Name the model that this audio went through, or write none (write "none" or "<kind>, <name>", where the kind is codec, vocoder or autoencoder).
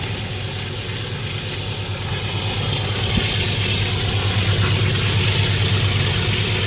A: none